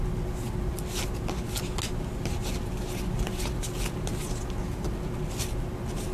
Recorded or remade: recorded